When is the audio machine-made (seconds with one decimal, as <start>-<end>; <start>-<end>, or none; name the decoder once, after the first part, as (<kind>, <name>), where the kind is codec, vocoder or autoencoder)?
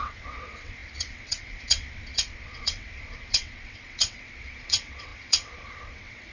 0.0-6.3 (vocoder, WaveNeXt)